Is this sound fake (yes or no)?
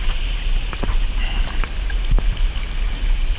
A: no